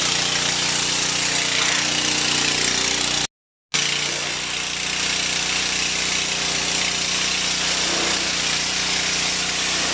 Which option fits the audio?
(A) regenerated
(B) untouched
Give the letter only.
B